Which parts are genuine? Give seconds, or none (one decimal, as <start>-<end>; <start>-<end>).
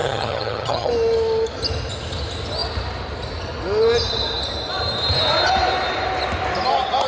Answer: 0.9-7.1